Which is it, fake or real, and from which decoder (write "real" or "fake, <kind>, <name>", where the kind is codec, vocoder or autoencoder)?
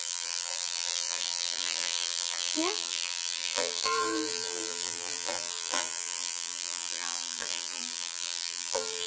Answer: fake, vocoder, BigVGAN v2